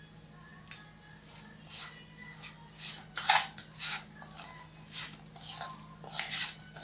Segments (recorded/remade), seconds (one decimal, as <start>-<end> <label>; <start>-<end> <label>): 0.0-6.8 recorded